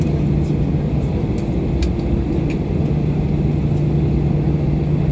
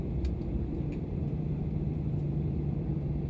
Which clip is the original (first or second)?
first